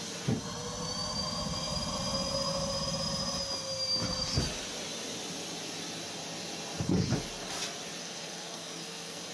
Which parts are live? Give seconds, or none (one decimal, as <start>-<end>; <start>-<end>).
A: 0.0-8.0